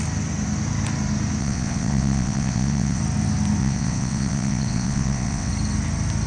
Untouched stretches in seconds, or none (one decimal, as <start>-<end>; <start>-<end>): 0.0-1.4; 3.0-3.6; 5.5-6.3